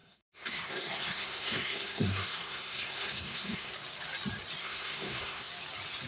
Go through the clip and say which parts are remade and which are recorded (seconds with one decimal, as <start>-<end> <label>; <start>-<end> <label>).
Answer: 0.0-3.7 remade; 3.7-4.6 recorded; 4.6-5.5 remade; 5.5-6.1 recorded